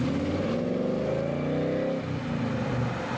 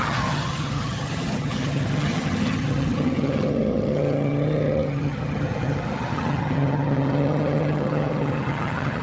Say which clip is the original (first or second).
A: first